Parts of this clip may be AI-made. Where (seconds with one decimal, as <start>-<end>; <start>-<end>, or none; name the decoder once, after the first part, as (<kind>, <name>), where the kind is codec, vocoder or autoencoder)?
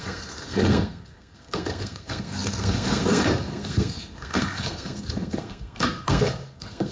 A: 0.0-6.9 (codec, SNAC)